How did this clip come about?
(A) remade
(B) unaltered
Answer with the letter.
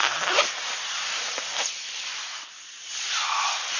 B